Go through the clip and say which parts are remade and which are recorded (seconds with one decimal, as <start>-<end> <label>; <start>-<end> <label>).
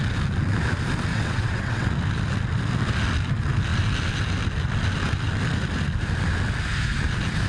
0.0-1.1 recorded; 1.1-1.9 remade; 1.9-7.5 recorded